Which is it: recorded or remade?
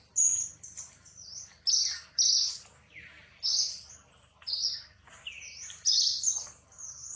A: recorded